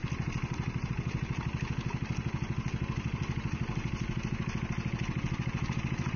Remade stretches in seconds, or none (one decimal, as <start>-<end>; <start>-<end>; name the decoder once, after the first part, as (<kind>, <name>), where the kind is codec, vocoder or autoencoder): none